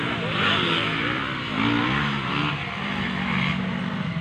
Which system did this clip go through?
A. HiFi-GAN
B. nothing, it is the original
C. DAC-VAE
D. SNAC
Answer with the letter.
B